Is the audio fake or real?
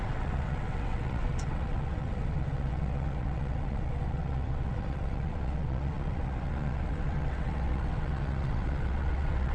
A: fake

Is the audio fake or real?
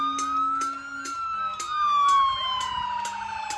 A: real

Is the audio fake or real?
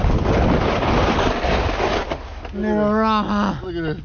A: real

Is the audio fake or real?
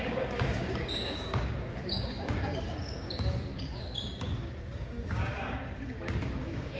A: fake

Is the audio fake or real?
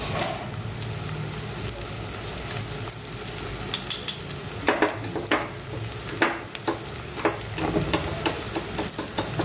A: real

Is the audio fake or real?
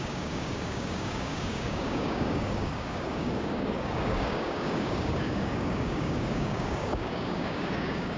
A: fake